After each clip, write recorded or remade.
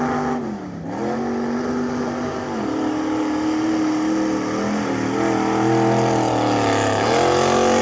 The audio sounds recorded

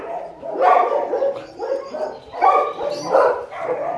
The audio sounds remade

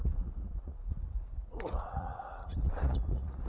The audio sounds remade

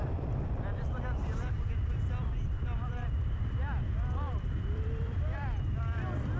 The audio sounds remade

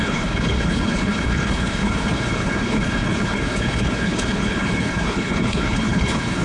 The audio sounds remade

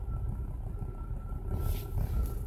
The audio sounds recorded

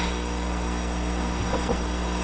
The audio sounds remade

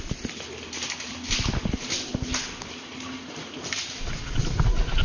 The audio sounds recorded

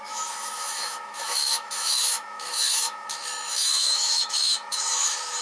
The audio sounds remade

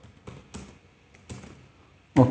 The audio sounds recorded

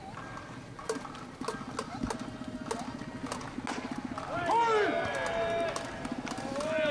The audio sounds recorded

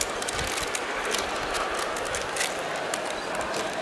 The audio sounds recorded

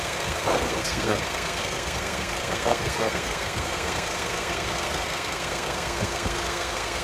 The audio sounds remade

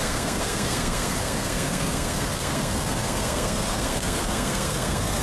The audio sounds remade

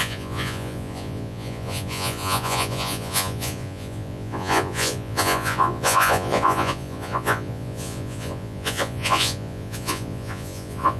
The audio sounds remade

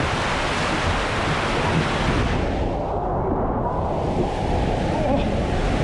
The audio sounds recorded